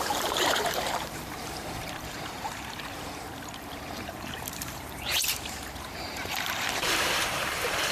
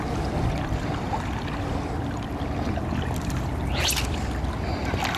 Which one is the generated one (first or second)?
first